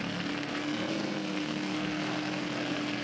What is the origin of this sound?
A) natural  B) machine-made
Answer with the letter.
B